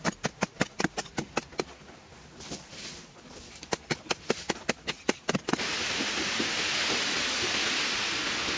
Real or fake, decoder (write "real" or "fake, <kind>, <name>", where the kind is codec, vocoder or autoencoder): real